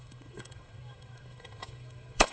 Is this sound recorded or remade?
remade